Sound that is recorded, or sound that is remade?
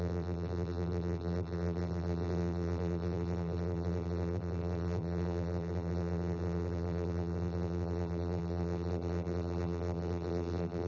remade